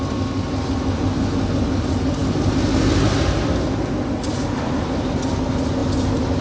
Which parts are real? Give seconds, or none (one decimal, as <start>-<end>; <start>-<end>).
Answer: 0.0-6.4